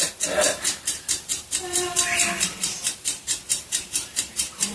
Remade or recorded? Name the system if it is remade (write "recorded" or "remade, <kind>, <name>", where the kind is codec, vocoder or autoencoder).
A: remade, vocoder, BigVGAN v2